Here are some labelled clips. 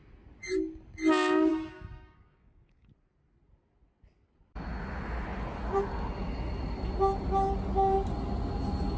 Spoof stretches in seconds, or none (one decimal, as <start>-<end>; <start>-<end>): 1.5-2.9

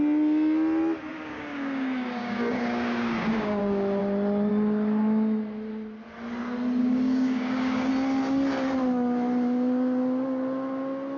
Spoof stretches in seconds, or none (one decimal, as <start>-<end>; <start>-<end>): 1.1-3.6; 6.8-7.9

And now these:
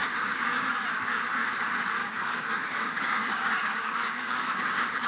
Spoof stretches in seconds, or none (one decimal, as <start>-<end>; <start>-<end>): 0.0-0.7; 2.0-5.1

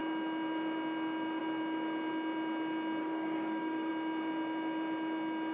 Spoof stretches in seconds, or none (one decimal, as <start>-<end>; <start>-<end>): 3.0-3.9

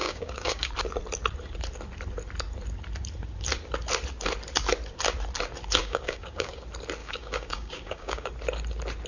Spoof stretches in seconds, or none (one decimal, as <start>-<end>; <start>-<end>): 0.0-0.7; 5.8-6.6; 7.0-8.3